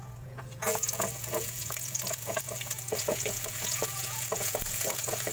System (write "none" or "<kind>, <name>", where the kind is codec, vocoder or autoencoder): vocoder, Vocos